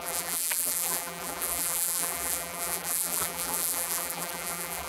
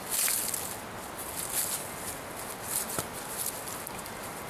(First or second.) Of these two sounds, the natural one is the second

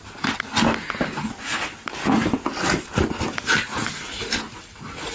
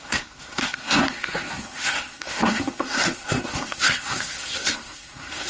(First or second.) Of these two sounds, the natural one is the first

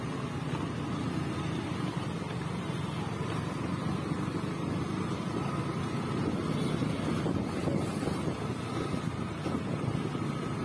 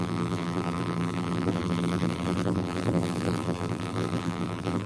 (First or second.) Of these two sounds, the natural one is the first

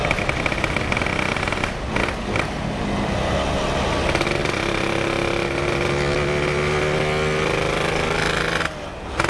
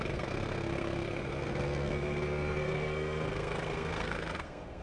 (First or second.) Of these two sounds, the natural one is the first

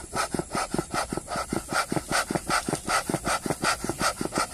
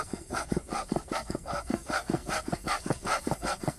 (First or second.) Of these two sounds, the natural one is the first